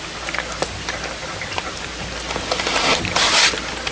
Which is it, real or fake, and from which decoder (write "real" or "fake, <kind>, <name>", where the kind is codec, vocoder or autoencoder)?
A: real